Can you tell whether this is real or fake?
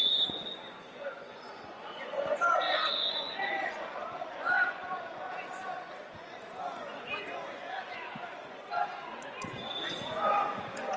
fake